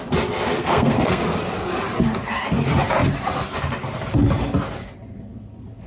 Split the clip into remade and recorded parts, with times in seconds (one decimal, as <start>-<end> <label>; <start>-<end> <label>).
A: 0.0-0.6 recorded; 0.6-1.2 remade; 1.2-5.9 recorded